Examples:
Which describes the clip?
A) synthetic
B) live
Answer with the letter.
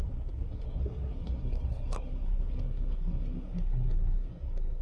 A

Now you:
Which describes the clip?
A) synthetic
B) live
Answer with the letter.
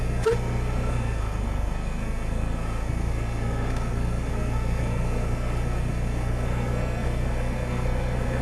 A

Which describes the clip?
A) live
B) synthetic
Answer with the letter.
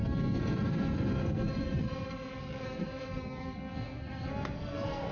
B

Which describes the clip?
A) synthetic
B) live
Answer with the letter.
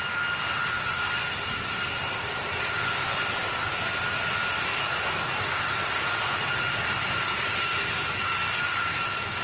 B